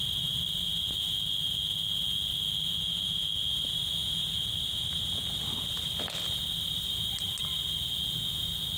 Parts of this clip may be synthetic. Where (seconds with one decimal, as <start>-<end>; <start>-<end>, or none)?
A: none